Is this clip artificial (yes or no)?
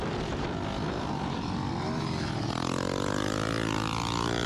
no